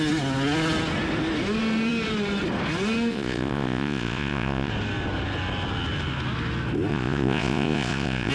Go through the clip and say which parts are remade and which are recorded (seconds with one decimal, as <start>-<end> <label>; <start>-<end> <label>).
0.0-3.1 recorded; 3.1-4.7 remade; 4.7-6.9 recorded; 6.9-8.3 remade